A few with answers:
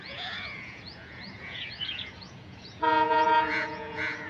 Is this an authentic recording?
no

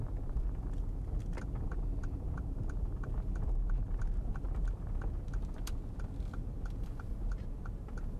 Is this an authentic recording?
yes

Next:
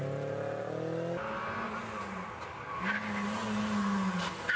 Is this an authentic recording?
yes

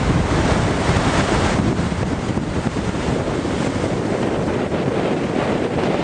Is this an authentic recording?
yes